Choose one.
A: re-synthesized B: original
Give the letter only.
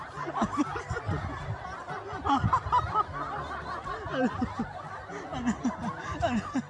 B